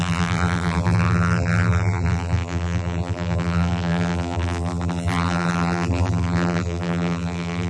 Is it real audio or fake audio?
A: fake